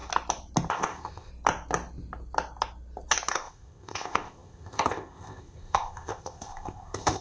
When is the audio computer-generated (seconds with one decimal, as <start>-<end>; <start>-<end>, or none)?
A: 0.7-1.3; 3.3-7.2

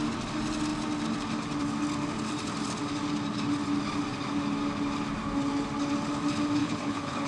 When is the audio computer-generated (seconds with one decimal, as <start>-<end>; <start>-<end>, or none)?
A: 6.6-7.3

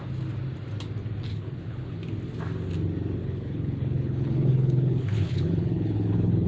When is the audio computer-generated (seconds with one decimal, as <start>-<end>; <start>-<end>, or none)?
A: 1.3-2.0; 3.2-6.5

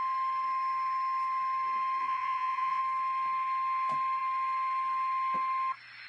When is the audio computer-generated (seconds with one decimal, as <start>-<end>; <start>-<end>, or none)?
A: 2.0-2.8

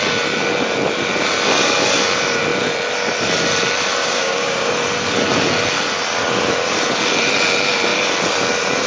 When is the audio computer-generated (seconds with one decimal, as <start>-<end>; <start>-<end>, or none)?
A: 4.0-4.7

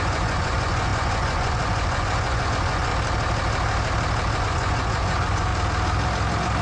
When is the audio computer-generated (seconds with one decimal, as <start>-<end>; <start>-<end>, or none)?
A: 0.0-2.9; 4.4-5.5

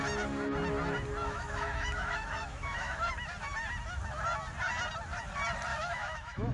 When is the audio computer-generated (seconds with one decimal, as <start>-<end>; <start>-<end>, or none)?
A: 1.2-3.1; 5.7-6.5

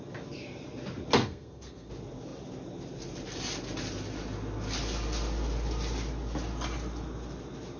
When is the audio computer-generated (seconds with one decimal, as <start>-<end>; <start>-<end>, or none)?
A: 1.2-1.9